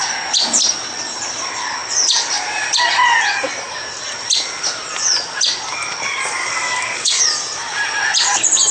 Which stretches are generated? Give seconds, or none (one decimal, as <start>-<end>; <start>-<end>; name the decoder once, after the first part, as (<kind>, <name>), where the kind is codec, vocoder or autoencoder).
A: 6.4-7.2 (codec, DAC)